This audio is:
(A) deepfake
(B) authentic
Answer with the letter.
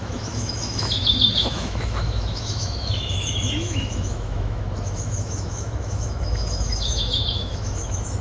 A